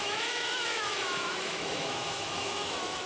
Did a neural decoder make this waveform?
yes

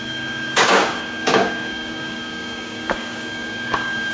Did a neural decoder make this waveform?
yes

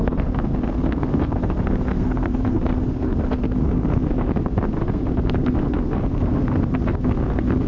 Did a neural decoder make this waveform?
yes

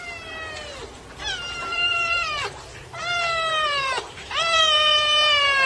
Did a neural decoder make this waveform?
yes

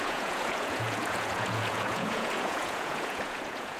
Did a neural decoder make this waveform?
yes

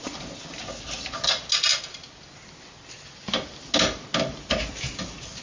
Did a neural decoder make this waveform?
no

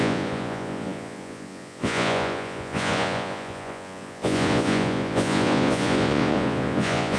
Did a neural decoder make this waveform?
yes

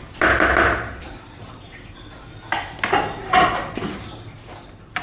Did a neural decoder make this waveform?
yes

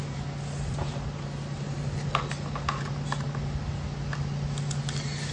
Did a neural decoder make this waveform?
no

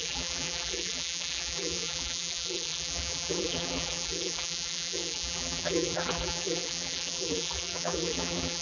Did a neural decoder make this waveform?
yes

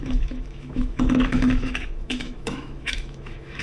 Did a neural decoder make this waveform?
yes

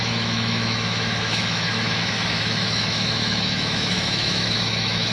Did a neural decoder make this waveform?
yes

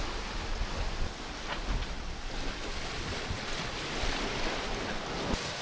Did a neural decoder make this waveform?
no